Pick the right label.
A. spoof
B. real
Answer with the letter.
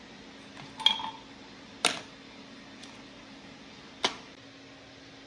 B